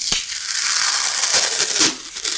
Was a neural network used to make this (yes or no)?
no